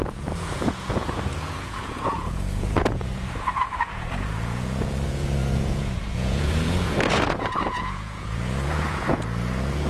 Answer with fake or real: fake